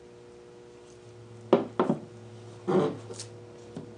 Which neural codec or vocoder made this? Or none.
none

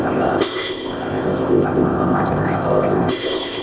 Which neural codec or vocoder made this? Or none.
codec, ZipCodec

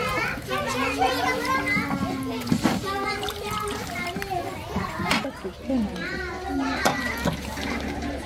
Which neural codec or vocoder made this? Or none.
none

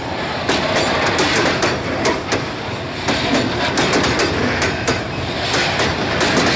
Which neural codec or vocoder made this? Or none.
none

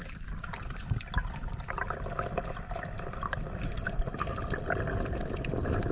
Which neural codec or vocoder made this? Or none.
vocoder, BigVGAN v2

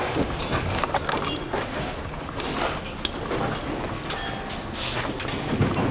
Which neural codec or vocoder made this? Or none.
none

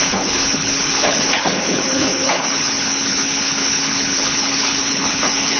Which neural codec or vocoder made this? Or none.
codec, HILCodec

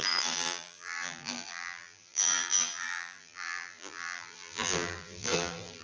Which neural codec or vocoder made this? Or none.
vocoder, BigVGAN v2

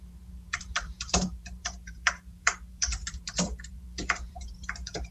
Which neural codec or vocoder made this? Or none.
vocoder, BigVGAN v2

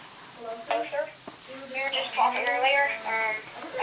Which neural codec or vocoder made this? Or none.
none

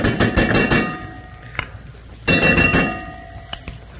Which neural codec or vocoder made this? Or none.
none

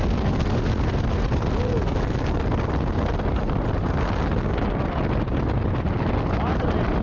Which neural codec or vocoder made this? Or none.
none